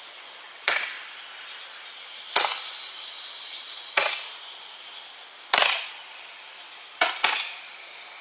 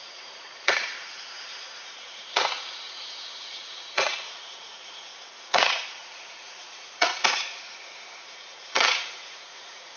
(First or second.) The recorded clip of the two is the first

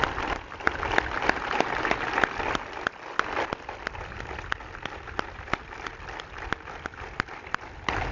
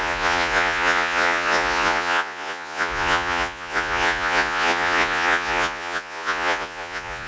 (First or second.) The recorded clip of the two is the first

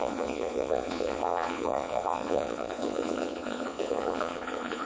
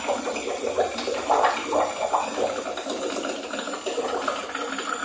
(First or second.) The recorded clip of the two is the second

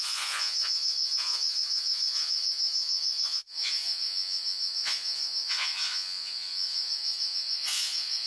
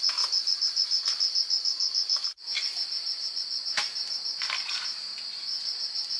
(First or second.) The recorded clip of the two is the second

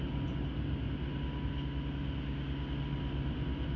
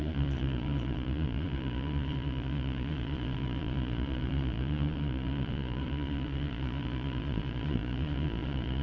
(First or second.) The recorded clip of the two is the first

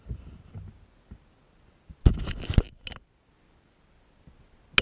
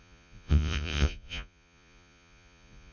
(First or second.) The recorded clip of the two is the first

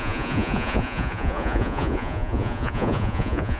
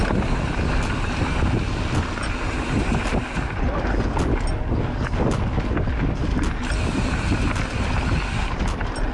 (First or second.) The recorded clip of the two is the second